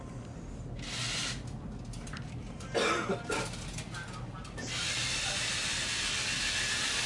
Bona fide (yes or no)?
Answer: yes